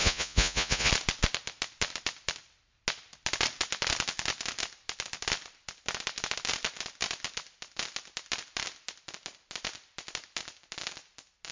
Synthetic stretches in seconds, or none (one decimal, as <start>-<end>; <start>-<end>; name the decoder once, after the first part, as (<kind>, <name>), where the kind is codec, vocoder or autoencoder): 0.0-0.9 (vocoder, Vocos)